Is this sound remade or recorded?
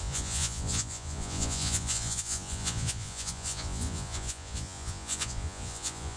remade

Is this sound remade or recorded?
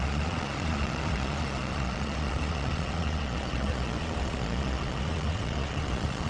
remade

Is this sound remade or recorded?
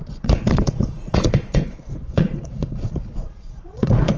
remade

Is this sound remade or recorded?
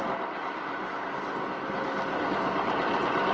recorded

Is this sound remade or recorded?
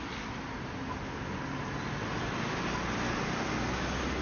recorded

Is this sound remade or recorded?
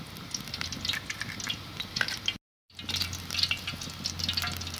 recorded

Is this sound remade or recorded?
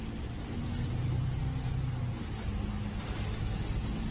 recorded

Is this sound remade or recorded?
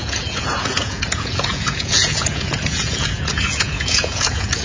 remade